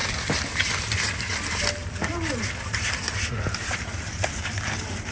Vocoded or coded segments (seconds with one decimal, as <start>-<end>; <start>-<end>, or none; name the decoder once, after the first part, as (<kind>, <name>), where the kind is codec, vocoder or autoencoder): none